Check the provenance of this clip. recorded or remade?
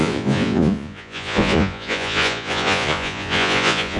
remade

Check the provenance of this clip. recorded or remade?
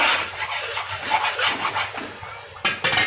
recorded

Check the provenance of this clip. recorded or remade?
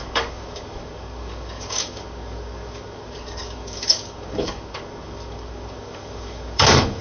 remade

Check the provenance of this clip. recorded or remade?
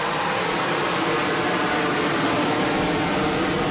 recorded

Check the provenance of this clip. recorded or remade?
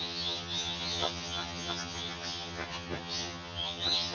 remade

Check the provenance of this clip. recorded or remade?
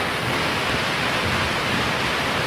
recorded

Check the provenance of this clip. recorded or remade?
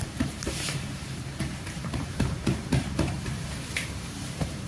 remade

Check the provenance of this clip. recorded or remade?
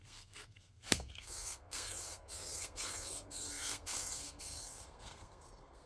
remade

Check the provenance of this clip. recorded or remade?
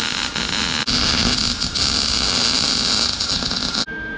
recorded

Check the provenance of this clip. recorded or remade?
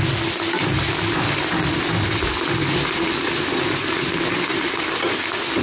recorded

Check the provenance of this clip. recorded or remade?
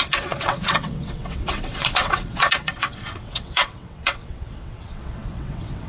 remade